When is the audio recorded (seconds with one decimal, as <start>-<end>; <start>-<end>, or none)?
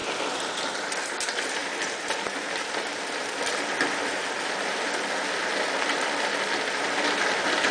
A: 0.0-7.7